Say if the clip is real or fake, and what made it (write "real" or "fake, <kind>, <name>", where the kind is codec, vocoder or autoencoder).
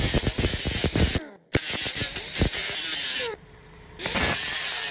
fake, vocoder, BigVGAN v2